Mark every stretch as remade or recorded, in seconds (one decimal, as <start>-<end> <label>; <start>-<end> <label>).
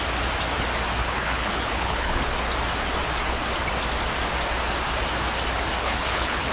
0.0-1.0 recorded; 1.0-2.3 remade; 2.3-5.8 recorded; 5.8-6.5 remade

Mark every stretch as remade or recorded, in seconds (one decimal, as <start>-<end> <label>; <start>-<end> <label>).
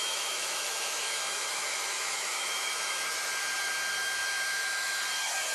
0.0-3.3 remade; 3.3-4.0 recorded; 4.0-5.0 remade; 5.0-5.5 recorded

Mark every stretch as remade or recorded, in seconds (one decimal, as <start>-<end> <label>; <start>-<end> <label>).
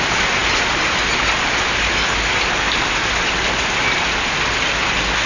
0.0-5.3 recorded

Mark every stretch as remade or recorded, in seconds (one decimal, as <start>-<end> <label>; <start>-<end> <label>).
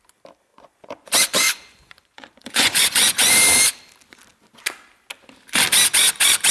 0.0-0.5 recorded; 0.5-3.3 remade; 3.3-6.5 recorded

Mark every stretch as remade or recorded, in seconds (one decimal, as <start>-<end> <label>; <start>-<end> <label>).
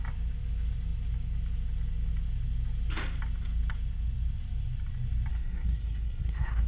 0.0-5.3 recorded; 5.3-6.7 remade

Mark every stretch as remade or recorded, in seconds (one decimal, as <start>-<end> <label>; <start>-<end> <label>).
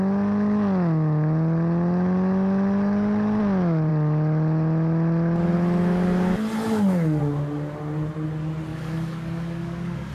0.0-8.7 recorded; 8.7-10.1 remade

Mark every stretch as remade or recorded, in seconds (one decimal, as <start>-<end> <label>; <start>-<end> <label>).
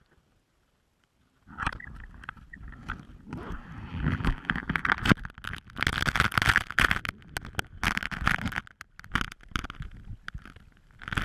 0.0-3.9 recorded; 3.9-4.8 remade; 4.8-11.2 recorded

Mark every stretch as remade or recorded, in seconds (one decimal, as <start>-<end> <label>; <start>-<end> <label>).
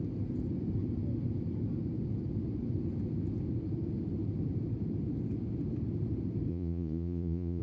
0.0-6.5 recorded; 6.5-7.6 remade